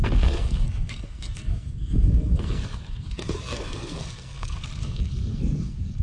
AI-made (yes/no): yes